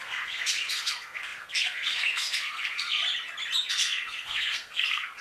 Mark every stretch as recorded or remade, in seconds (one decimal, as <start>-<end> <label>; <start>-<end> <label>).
0.0-3.0 remade; 3.0-3.7 recorded; 3.7-5.2 remade